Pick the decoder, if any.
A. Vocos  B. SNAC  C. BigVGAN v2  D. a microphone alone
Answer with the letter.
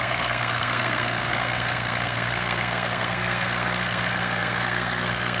B